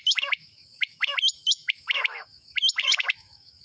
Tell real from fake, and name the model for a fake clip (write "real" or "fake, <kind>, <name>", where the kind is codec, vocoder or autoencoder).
fake, autoencoder, DAC-VAE